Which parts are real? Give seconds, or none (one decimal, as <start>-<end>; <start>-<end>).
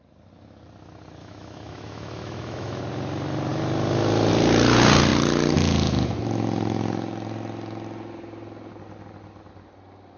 0.0-1.2; 2.8-10.2